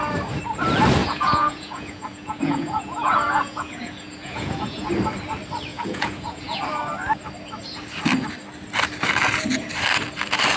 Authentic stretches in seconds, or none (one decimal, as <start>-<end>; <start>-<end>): 0.0-1.0; 4.9-5.7; 6.6-10.6